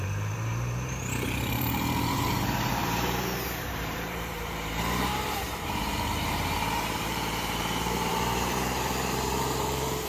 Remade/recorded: remade